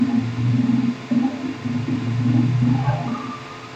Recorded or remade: recorded